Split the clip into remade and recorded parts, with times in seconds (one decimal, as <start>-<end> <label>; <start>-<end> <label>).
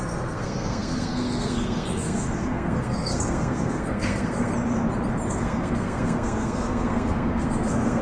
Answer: 0.0-4.5 remade; 4.5-5.3 recorded; 5.3-8.0 remade